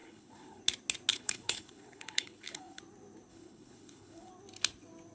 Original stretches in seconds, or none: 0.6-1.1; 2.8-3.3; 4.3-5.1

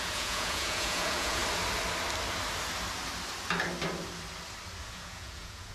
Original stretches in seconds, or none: 1.4-4.8

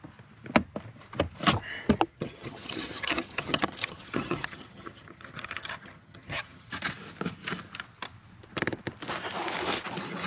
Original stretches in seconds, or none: 0.0-2.1; 6.7-10.3